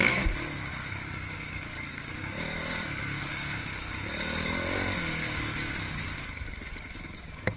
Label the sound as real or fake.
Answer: fake